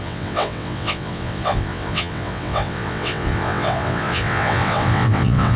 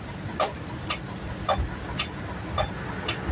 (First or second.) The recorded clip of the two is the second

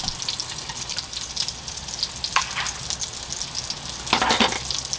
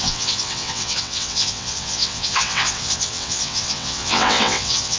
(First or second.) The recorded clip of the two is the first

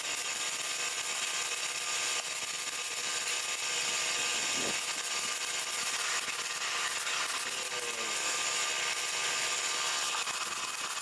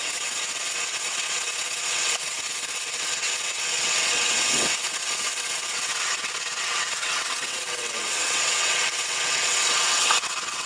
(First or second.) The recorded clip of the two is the first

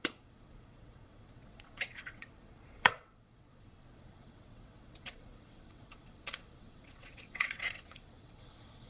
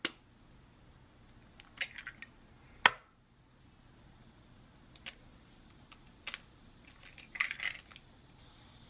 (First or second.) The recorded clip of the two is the second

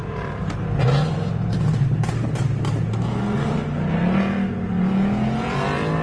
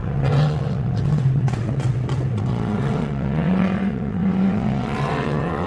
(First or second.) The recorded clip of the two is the first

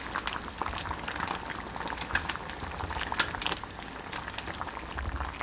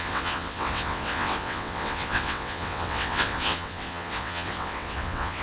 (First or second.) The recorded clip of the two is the first